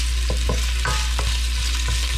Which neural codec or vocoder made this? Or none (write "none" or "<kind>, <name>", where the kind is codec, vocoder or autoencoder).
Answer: none